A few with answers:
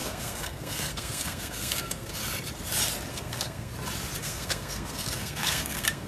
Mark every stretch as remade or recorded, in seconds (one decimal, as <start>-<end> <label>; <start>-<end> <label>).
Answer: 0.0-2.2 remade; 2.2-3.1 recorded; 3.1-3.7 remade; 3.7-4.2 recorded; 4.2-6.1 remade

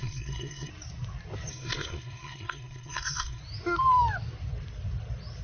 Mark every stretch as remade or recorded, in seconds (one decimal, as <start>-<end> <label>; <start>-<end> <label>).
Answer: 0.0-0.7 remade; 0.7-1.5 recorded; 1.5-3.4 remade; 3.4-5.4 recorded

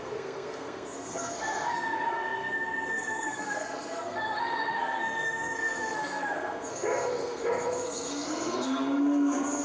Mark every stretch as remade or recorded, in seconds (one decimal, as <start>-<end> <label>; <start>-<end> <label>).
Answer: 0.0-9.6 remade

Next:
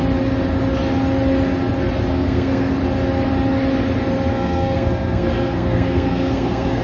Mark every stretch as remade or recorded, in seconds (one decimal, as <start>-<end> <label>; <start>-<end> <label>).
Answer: 0.0-2.1 recorded; 2.1-2.7 remade; 2.7-4.3 recorded; 4.3-6.8 remade

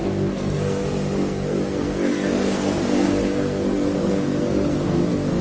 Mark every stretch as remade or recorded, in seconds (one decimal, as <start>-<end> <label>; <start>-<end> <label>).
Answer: 0.0-5.4 remade